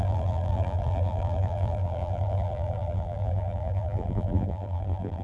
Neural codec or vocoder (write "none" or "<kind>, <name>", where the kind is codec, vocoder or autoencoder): vocoder, BigVGAN v2